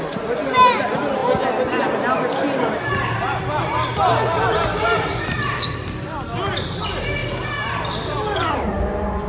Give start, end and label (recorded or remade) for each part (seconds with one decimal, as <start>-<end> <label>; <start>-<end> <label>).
0.0-9.3 recorded